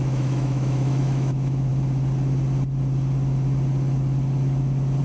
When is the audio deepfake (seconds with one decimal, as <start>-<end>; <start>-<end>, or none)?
0.0-1.7